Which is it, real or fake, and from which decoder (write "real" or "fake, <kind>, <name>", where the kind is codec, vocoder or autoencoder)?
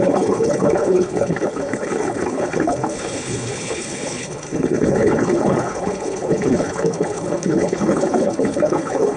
fake, codec, HILCodec